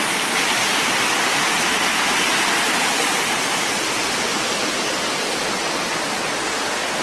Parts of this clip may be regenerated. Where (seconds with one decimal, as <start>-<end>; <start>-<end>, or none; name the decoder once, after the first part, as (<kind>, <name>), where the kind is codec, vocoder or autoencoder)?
none